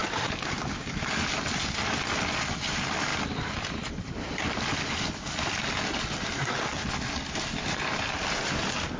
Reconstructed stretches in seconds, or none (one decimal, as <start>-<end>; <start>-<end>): none